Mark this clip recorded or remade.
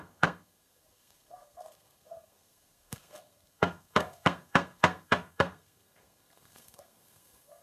remade